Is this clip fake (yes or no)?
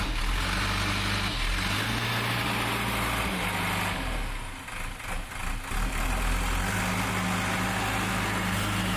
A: no